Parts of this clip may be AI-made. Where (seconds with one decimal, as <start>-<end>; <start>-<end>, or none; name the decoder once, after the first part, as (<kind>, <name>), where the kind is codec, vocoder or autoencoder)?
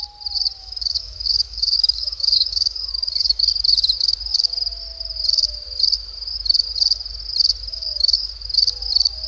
0.6-3.4 (autoencoder, DAC-VAE); 7.7-8.3